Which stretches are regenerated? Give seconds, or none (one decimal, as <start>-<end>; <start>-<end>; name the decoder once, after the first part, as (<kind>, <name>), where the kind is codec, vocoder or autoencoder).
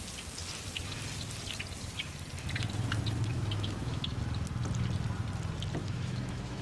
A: 3.3-4.2 (autoencoder, DAC-VAE); 5.8-6.6